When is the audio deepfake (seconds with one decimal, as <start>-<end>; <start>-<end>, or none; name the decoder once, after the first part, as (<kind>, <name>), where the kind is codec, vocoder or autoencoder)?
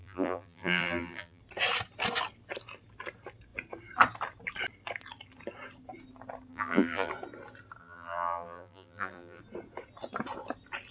0.0-1.4 (vocoder, BigVGAN v2); 6.5-7.1; 7.8-9.4